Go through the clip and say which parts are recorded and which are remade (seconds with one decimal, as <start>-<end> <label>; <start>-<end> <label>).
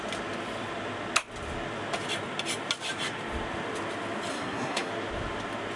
0.0-4.3 recorded; 4.3-4.9 remade; 4.9-5.8 recorded